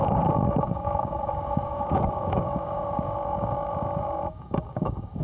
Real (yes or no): no